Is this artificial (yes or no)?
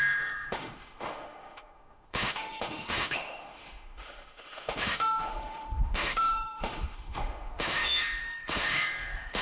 yes